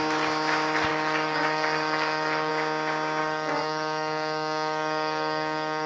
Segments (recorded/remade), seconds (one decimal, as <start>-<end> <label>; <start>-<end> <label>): 0.0-0.9 recorded; 0.9-2.5 remade; 2.5-3.2 recorded; 3.2-5.9 remade